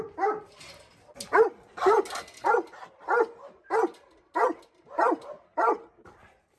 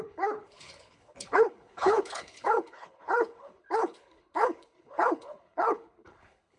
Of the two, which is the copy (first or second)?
second